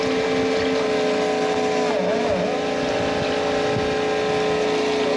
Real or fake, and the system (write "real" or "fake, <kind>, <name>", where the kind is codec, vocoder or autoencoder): real